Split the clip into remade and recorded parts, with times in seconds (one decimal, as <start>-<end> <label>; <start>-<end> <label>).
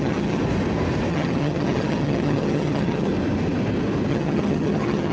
0.0-0.4 remade; 0.4-1.1 recorded; 1.1-3.1 remade; 3.1-4.1 recorded; 4.1-5.1 remade